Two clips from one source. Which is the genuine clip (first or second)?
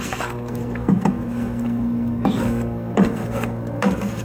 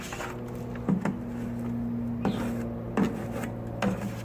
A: second